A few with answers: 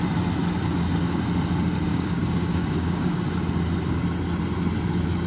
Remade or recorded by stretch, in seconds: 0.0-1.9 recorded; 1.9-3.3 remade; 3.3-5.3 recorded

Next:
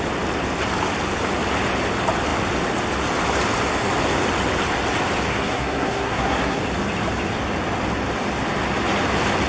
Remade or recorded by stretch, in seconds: 0.0-5.3 recorded; 5.3-6.6 remade; 6.6-9.5 recorded

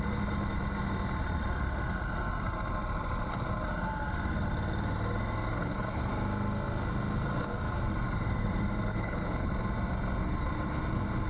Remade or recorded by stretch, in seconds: 0.0-5.6 recorded; 5.6-6.1 remade; 6.1-8.9 recorded; 8.9-9.5 remade; 9.5-11.3 recorded